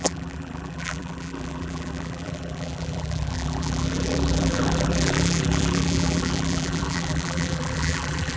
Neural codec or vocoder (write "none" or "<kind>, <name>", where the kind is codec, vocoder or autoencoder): vocoder, BigVGAN v2